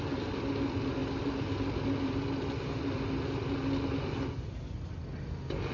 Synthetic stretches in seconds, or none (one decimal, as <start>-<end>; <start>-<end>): none